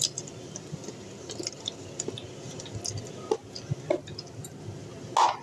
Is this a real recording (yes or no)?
yes